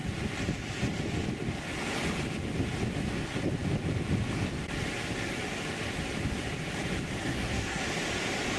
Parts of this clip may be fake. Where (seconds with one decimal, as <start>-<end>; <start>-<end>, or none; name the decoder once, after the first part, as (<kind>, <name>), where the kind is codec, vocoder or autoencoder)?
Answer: 7.2-7.8 (codec, SNAC)